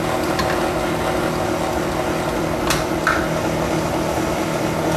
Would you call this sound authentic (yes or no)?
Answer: yes